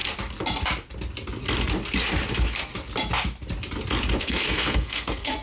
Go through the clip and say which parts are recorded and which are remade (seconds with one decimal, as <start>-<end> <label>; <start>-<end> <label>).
0.0-2.3 recorded; 2.3-2.7 remade; 2.7-4.2 recorded; 4.2-5.4 remade